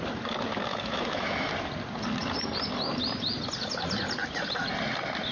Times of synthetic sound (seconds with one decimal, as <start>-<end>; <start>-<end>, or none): 0.7-1.5